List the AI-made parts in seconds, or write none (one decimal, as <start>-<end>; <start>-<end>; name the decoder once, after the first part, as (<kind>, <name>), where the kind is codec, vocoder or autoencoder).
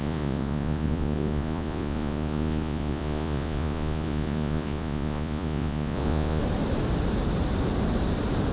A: 0.0-6.4 (vocoder, Vocos)